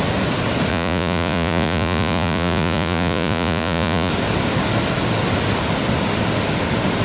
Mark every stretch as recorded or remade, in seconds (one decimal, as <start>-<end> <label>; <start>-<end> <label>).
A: 0.0-0.7 recorded; 0.7-4.1 remade; 4.1-7.0 recorded